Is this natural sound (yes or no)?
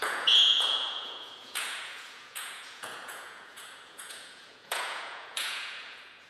no